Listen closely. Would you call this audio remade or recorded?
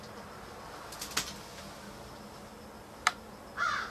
recorded